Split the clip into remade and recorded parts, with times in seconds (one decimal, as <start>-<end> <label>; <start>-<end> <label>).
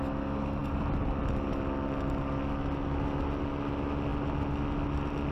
0.0-5.3 recorded